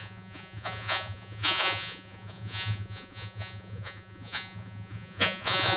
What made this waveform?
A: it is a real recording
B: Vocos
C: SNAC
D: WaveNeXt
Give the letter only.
B